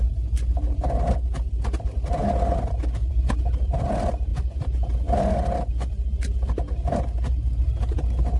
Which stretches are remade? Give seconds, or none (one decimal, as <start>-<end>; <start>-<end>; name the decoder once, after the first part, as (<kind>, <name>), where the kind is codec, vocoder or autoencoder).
4.3-4.9 (vocoder, Vocos)